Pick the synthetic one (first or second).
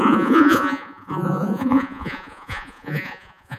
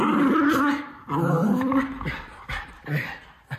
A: first